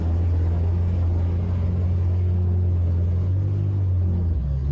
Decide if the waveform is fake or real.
real